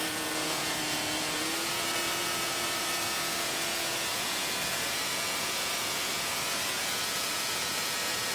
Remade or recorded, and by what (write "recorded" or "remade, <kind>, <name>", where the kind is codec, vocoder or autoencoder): remade, vocoder, Vocos